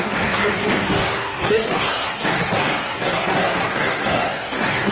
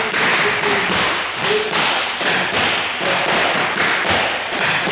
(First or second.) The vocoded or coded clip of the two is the first